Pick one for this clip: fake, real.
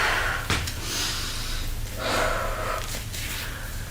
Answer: real